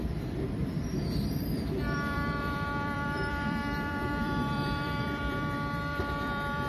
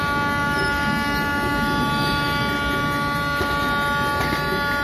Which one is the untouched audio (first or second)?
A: second